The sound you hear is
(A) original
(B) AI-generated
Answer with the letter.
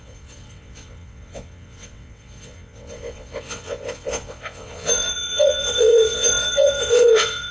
B